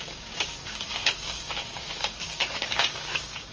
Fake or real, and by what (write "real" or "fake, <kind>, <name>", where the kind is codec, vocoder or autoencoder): fake, codec, DAC